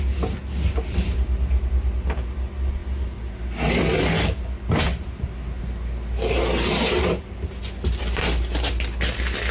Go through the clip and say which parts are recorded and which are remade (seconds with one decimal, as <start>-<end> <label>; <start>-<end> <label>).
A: 0.0-9.5 recorded